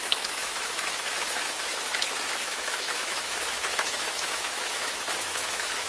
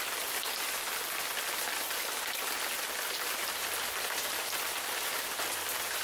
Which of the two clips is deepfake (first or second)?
first